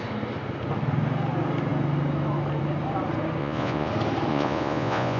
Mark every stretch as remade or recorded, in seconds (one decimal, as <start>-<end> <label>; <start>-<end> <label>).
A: 0.0-3.4 recorded; 3.4-3.9 remade; 3.9-4.3 recorded; 4.3-5.2 remade